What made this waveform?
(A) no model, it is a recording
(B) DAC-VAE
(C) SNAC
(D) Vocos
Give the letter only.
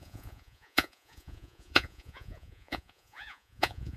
D